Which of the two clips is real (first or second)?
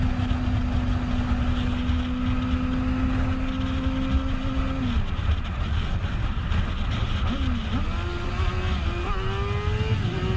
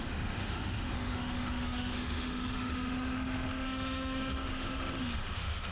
first